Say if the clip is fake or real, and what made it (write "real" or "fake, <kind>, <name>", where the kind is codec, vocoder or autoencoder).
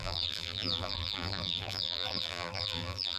fake, vocoder, BigVGAN v2